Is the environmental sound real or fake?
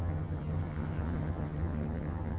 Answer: fake